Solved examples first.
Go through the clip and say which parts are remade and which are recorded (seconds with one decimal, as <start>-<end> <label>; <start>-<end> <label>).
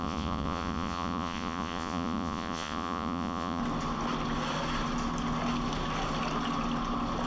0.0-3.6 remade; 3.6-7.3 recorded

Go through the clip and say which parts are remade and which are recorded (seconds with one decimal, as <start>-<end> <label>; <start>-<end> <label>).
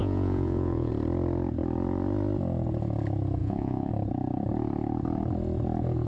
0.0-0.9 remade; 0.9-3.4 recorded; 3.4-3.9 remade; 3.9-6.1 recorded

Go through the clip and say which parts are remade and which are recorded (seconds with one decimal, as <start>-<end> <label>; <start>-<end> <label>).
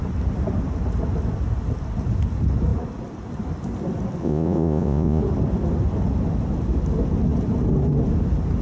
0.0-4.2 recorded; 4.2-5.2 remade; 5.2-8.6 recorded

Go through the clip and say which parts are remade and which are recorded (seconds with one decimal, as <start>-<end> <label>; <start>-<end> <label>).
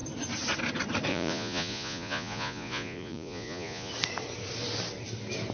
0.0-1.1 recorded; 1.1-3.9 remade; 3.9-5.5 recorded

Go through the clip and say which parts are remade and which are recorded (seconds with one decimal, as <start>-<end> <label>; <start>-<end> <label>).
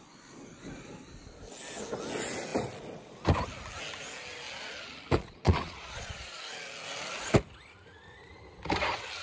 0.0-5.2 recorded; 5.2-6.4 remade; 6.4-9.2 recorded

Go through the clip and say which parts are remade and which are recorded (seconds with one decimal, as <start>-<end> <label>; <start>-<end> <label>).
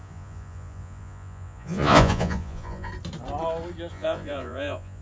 0.0-2.9 remade; 2.9-3.9 recorded; 3.9-5.0 remade